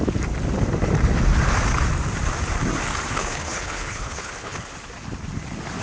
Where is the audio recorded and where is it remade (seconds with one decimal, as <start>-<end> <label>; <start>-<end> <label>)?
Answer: 0.0-3.1 recorded; 3.1-4.7 remade; 4.7-5.8 recorded